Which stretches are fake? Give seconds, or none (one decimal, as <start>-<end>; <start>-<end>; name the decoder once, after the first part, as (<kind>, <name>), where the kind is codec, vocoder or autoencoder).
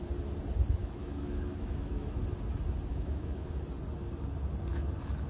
0.8-2.2 (autoencoder, DAC-VAE); 2.9-3.5; 4.7-5.3